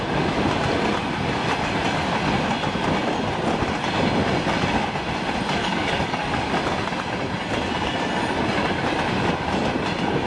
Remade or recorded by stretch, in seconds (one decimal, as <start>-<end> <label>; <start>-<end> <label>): 0.0-5.6 recorded; 5.6-6.6 remade; 6.6-10.3 recorded